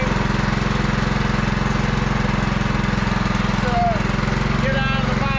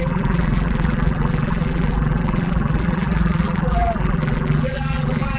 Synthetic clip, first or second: second